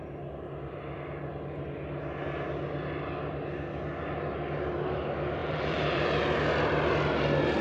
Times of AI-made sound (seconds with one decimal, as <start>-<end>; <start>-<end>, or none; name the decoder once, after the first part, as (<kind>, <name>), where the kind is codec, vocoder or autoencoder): 5.4-6.2 (vocoder, BigVGAN v2)